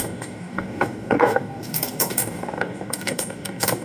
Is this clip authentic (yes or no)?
no